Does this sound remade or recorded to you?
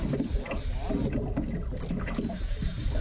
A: recorded